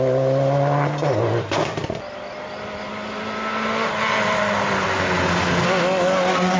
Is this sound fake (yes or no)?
no